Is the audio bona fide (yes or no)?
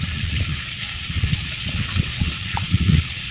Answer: no